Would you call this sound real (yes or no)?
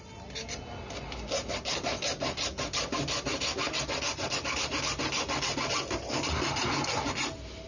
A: no